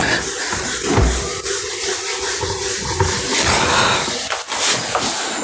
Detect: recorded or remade recorded